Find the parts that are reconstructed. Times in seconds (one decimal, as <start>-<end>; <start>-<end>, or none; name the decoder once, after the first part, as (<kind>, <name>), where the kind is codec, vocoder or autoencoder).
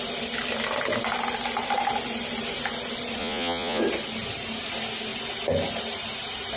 3.2-3.8 (vocoder, Vocos)